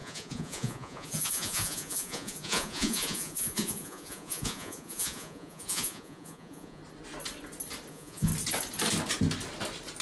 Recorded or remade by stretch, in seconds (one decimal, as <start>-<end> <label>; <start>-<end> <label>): 0.0-6.8 remade; 6.8-7.9 recorded; 7.9-8.3 remade; 8.3-10.0 recorded